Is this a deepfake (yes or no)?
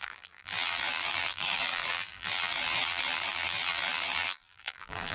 yes